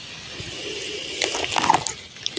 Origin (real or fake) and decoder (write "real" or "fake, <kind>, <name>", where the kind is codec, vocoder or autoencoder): real